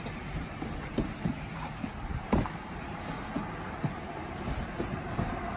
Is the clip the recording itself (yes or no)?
no